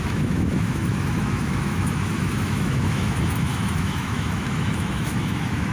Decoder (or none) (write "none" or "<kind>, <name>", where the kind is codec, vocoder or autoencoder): autoencoder, DAC-VAE